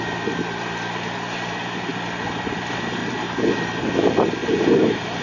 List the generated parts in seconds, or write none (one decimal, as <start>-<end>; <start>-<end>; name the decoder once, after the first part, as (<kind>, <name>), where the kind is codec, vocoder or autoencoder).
none